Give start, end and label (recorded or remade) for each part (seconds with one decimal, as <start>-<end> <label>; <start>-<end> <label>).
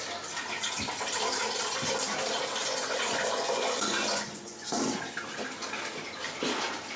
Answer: 0.0-2.6 recorded; 2.6-4.9 remade; 4.9-7.0 recorded